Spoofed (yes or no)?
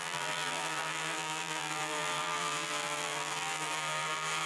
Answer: yes